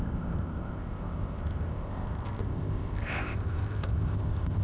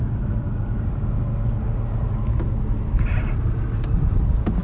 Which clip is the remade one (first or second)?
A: first